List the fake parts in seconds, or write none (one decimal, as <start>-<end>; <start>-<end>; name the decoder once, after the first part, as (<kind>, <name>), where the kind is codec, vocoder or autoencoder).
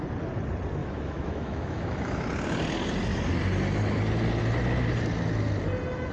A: 0.8-2.3 (autoencoder, DAC-VAE)